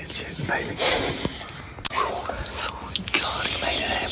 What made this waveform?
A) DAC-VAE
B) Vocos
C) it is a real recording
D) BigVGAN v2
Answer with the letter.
C